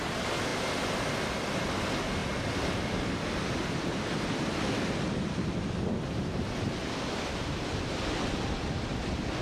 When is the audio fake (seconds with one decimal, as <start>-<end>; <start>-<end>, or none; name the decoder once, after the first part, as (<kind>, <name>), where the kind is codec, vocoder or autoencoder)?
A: none